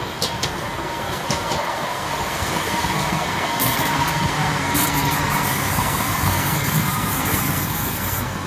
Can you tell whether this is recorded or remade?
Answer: remade